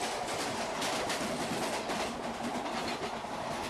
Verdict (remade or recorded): recorded